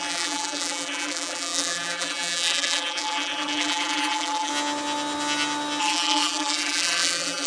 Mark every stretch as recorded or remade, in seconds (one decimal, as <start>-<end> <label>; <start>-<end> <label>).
0.0-4.5 remade; 4.5-5.8 recorded; 5.8-7.5 remade